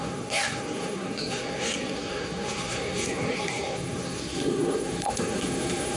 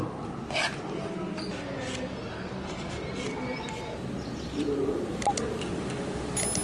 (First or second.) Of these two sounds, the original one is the second